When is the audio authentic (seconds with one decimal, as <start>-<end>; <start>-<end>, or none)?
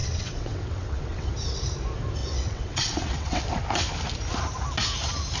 1.3-2.2; 3.4-5.4